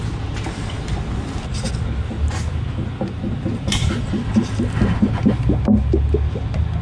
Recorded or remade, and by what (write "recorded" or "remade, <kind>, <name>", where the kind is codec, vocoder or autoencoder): recorded